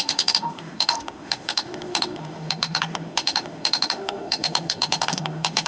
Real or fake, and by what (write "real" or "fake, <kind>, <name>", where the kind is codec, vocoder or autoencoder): fake, autoencoder, DAC-VAE